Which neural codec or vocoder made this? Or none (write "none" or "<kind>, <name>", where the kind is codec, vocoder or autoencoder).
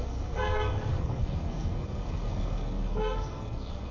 codec, SNAC